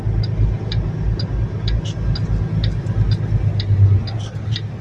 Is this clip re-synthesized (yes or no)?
no